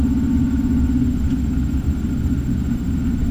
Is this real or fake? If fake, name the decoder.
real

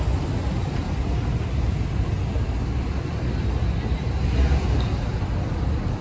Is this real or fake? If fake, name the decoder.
real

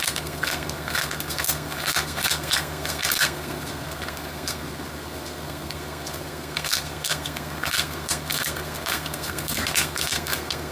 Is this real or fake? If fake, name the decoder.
fake, codec, SNAC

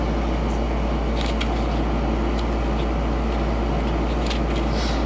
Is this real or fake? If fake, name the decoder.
real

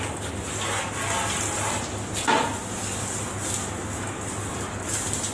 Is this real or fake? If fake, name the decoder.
real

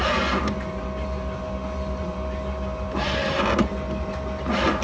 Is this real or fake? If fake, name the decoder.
real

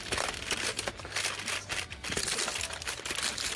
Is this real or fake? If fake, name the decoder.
real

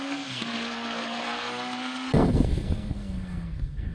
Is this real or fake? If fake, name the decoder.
fake, codec, SNAC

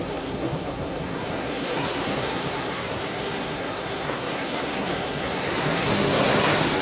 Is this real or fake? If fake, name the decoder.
fake, codec, SNAC